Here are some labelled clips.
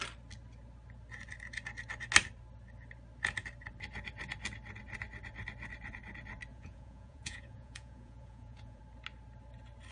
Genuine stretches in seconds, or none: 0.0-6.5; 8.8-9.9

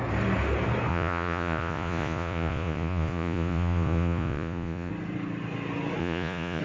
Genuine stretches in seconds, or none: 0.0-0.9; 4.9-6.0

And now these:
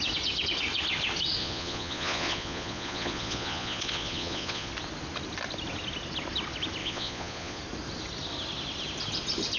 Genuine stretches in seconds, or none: 0.0-1.4; 4.7-6.8; 7.6-9.6